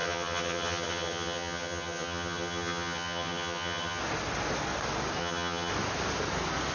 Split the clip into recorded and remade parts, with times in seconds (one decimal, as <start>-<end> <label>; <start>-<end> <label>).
0.0-4.0 remade; 4.0-5.2 recorded; 5.2-5.7 remade; 5.7-6.7 recorded